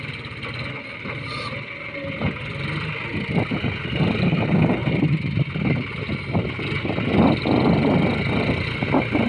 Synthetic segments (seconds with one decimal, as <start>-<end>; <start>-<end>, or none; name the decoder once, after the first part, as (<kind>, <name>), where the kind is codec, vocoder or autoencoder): none